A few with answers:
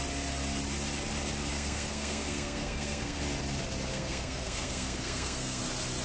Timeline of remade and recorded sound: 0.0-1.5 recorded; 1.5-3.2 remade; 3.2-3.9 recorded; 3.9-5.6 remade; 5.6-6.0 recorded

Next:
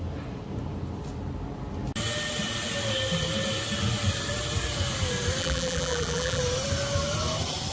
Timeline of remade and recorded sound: 0.0-5.4 recorded; 5.4-6.4 remade; 6.4-7.7 recorded

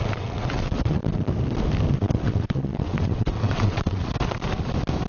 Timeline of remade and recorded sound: 0.0-1.0 remade; 1.0-1.9 recorded; 1.9-4.1 remade; 4.1-5.1 recorded

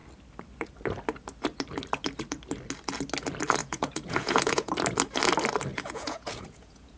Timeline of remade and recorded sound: 0.0-3.6 recorded; 3.6-4.7 remade; 4.7-5.7 recorded; 5.7-7.0 remade